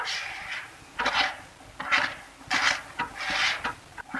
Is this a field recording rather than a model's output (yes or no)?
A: yes